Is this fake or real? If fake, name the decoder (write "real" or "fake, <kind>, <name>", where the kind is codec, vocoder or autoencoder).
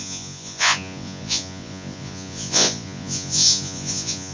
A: fake, vocoder, Vocos